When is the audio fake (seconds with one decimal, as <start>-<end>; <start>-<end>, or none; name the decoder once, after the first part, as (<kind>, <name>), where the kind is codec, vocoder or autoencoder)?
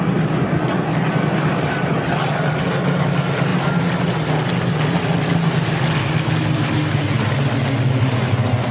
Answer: none